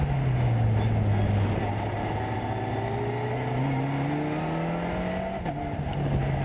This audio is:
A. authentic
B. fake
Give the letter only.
A